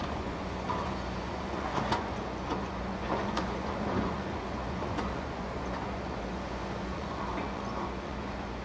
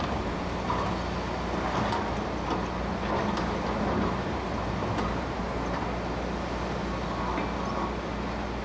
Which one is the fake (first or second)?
first